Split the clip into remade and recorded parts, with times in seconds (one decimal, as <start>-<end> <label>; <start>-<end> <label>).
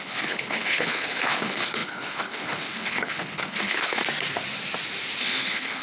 0.0-4.0 remade; 4.0-5.2 recorded; 5.2-5.8 remade